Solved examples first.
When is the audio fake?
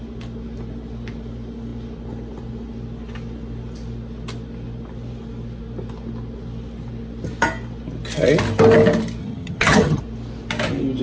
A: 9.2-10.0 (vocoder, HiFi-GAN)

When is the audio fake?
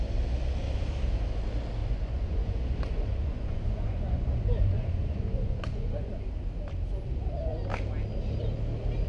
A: 1.8-6.1 (vocoder, Vocos)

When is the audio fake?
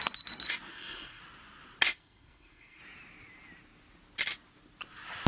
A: 0.7-1.2 (codec, SNAC); 1.9-2.8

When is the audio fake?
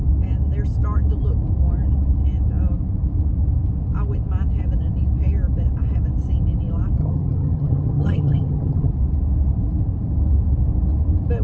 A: 7.0-8.9 (vocoder, HiFi-GAN)